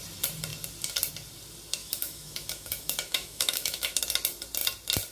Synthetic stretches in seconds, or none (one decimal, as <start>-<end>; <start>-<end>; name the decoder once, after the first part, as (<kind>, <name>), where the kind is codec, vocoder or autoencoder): 1.8-4.0 (autoencoder, DAC-VAE)